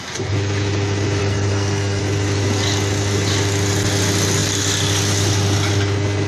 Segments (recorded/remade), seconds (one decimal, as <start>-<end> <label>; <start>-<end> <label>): 0.0-1.2 recorded; 1.2-2.0 remade; 2.0-6.3 recorded